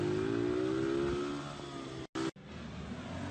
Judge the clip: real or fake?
real